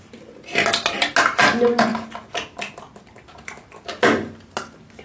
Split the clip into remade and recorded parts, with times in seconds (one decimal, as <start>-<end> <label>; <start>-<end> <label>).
0.0-5.0 recorded